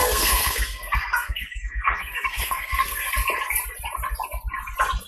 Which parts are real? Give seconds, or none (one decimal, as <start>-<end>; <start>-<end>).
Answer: 3.1-5.1